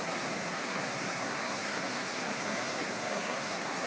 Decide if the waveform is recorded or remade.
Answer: remade